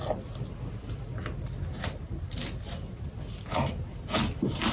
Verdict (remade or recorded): recorded